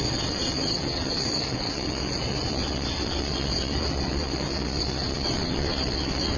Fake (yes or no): yes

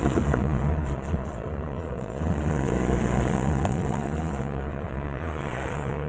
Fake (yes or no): yes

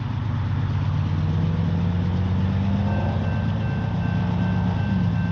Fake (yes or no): no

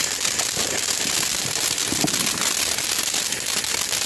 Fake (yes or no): no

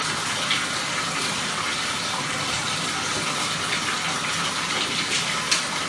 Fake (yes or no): no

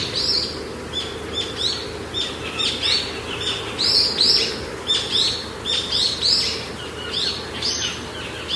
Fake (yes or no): no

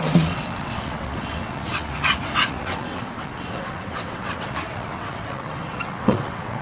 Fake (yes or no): yes